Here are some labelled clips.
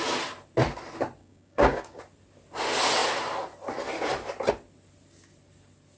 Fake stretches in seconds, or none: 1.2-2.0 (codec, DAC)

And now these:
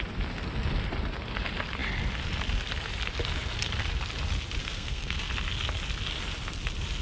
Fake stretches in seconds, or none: 4.6-5.3 (codec, SNAC)

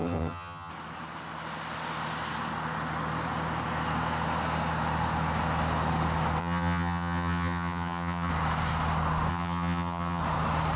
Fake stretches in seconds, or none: 0.0-0.7 (vocoder, HiFi-GAN); 6.4-8.3; 9.3-10.2

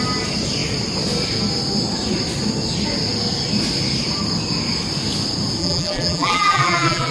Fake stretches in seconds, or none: 5.6-7.1 (vocoder, BigVGAN v2)

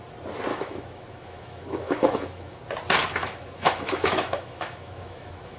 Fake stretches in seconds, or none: 0.5-2.6 (autoencoder, DAC-VAE); 3.2-5.6

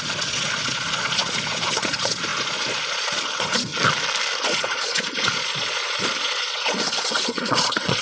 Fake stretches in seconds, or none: 0.0-3.7 (vocoder, Vocos); 4.4-8.0

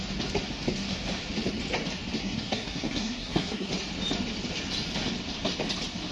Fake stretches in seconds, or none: 2.2-3.7 (codec, SNAC)